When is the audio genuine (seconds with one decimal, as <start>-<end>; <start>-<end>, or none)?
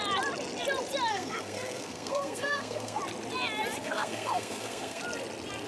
0.0-1.1; 3.0-3.8; 5.0-5.7